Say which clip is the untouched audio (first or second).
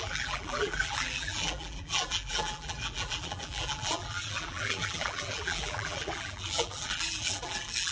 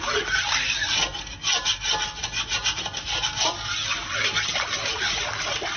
second